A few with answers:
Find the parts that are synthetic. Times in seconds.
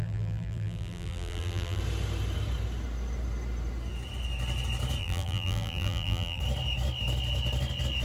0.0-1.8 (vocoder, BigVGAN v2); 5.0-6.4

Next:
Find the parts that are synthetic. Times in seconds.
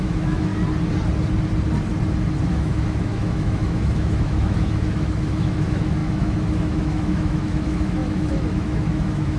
0.0-0.5 (autoencoder, DAC-VAE); 2.4-9.4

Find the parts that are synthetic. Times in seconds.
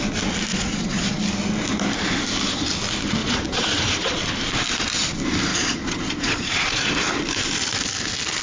0.5-1.2 (vocoder, Vocos); 3.2-4.2; 5.5-6.9